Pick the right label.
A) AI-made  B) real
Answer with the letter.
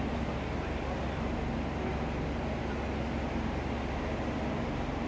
B